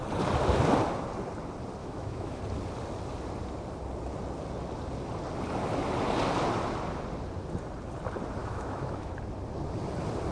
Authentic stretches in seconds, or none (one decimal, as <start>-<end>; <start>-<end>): 0.0-1.8; 2.4-8.4; 9.1-10.3